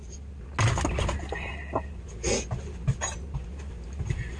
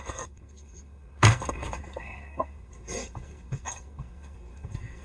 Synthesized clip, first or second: second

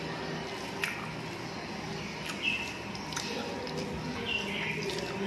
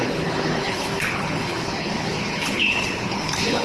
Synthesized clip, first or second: second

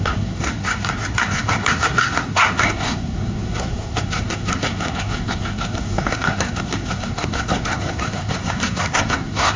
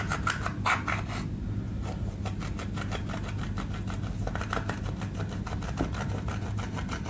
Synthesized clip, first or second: first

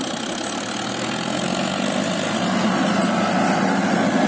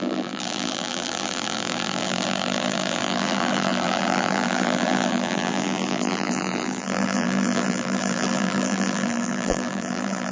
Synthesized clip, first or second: second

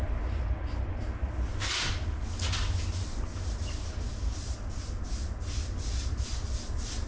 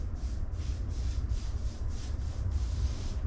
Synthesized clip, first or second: second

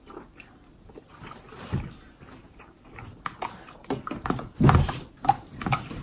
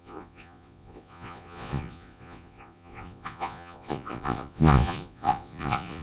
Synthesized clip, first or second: second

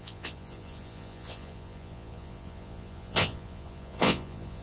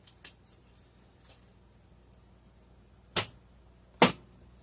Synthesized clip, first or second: first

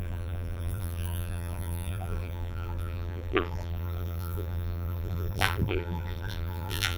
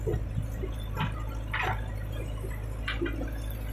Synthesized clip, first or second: first